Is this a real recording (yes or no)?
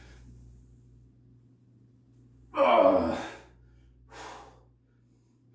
yes